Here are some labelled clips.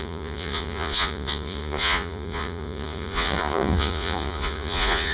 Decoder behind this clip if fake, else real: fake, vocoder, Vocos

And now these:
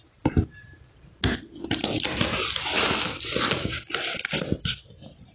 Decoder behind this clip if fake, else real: real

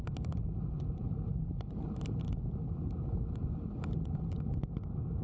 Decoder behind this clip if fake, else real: real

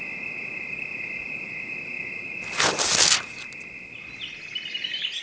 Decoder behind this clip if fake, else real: real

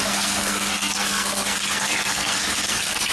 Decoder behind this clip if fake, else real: fake, codec, SNAC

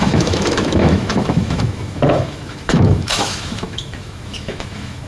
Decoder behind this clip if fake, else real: fake, autoencoder, DAC-VAE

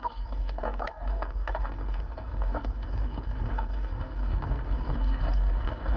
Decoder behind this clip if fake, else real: fake, codec, SNAC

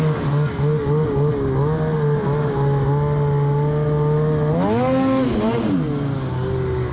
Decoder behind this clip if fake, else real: real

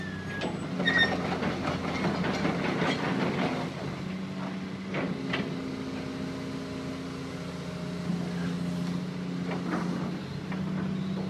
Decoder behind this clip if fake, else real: real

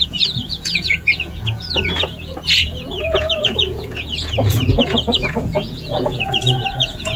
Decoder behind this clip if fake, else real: fake, vocoder, Vocos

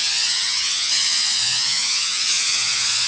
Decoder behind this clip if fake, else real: fake, vocoder, Vocos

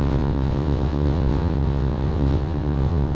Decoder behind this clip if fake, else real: fake, vocoder, WaveNeXt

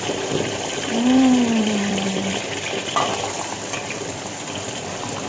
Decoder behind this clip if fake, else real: fake, vocoder, BigVGAN v2